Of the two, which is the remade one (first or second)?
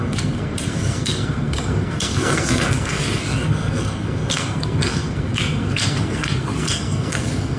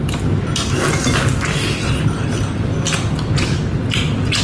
first